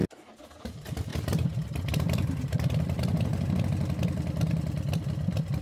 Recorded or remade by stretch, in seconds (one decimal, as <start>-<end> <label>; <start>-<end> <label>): 0.0-1.1 recorded; 1.1-3.5 remade; 3.5-5.6 recorded